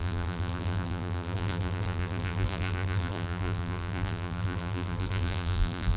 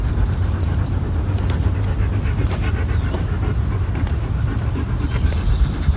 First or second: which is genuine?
second